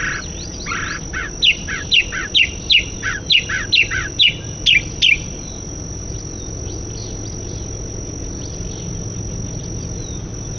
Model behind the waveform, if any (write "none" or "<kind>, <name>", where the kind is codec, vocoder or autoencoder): none